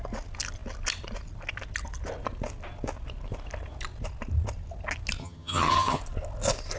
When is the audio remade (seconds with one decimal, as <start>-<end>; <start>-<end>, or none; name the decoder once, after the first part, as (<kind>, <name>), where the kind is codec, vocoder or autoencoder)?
5.2-6.0 (vocoder, HiFi-GAN)